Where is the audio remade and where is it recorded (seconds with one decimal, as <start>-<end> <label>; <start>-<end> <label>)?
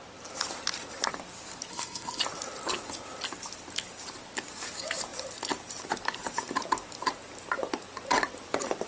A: 0.0-1.7 recorded; 1.7-2.2 remade; 2.2-8.9 recorded